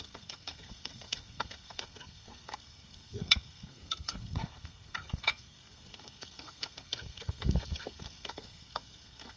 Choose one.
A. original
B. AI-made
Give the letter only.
B